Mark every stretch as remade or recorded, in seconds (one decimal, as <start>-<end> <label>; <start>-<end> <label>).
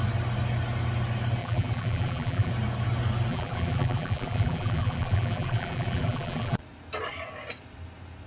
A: 0.0-1.4 recorded; 1.4-2.5 remade; 2.5-3.3 recorded; 3.3-6.6 remade; 6.6-8.3 recorded